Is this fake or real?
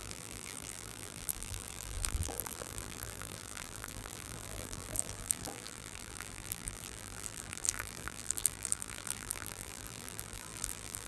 fake